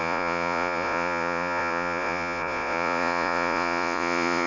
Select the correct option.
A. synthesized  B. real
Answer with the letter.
A